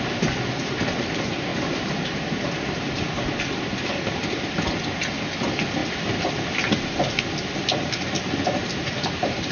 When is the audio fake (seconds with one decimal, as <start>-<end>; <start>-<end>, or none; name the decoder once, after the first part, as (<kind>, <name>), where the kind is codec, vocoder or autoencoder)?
1.5-2.7 (vocoder, BigVGAN v2); 5.8-6.3; 8.6-9.5